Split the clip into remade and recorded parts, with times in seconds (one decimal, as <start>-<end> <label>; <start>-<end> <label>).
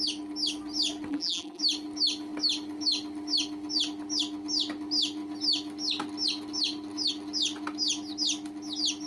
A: 0.0-1.1 recorded; 1.1-1.6 remade; 1.6-9.1 recorded